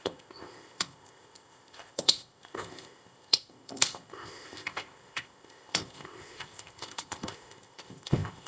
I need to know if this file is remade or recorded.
remade